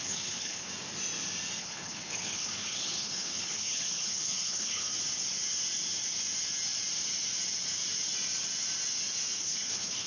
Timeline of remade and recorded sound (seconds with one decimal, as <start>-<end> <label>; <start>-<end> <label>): 0.0-0.7 remade; 0.7-1.6 recorded; 1.6-4.9 remade; 4.9-9.4 recorded; 9.4-10.1 remade